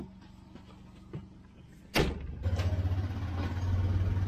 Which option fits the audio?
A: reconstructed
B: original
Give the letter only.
B